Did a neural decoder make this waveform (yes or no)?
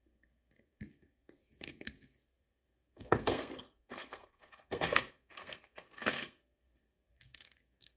yes